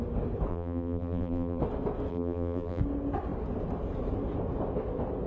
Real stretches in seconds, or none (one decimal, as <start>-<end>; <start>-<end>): 0.0-0.5; 1.6-2.1; 2.8-5.3